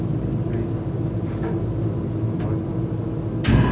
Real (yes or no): yes